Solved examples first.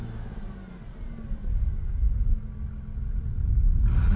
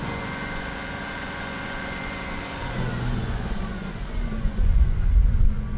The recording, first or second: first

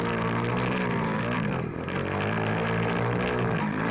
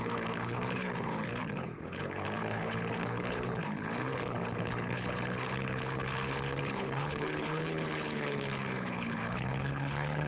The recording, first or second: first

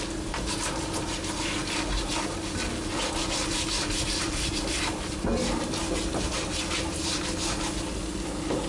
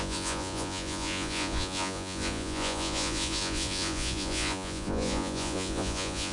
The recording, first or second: first